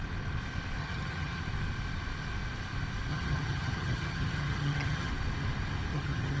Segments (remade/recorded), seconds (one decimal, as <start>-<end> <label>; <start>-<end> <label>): 0.0-0.8 recorded; 0.8-1.4 remade; 1.4-3.1 recorded; 3.1-5.1 remade; 5.1-5.9 recorded; 5.9-6.4 remade